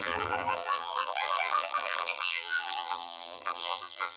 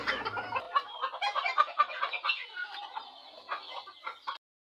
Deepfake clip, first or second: first